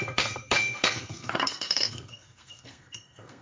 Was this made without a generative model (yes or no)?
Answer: no